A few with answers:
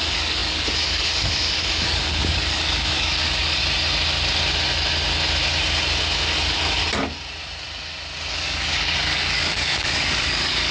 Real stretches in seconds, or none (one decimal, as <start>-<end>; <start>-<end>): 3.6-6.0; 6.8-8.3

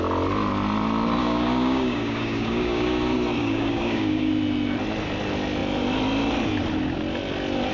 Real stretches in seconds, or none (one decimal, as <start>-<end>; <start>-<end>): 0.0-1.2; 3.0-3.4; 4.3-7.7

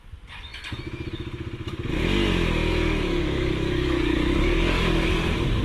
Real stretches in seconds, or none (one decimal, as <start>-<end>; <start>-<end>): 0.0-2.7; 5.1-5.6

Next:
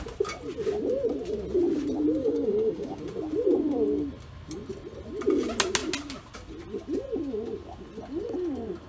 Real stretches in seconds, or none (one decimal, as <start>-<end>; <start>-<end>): 0.0-2.2; 3.0-8.9